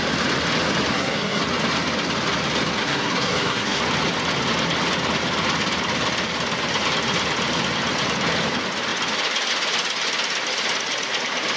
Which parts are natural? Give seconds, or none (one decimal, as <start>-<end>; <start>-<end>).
0.0-0.9; 1.4-2.8; 3.8-11.6